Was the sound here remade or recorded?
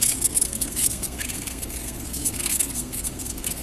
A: remade